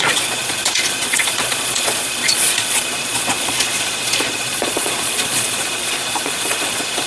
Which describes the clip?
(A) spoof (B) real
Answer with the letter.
A